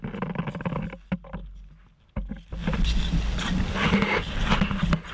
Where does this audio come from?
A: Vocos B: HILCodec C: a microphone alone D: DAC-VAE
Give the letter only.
C